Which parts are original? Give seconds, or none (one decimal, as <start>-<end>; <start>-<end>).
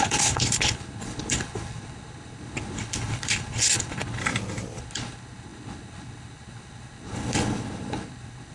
4.2-4.8